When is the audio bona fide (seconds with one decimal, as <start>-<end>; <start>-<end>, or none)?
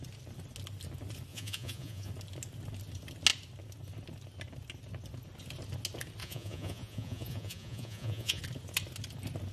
0.0-1.3; 2.1-6.2; 8.4-9.5